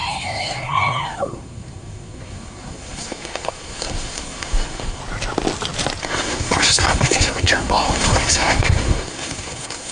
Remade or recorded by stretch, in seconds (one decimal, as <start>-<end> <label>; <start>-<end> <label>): 0.0-5.0 remade; 5.0-6.0 recorded; 6.0-9.9 remade